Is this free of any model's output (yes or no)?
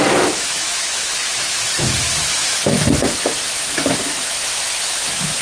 no